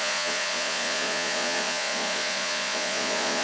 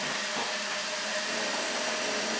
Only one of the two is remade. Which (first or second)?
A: first